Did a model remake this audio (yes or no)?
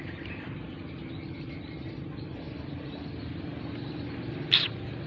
yes